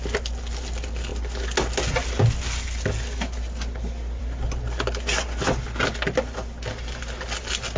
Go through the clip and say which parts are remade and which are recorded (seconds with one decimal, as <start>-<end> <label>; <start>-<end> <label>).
0.0-7.8 recorded